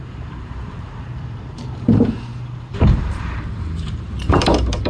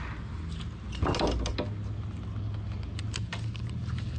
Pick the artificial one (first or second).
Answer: first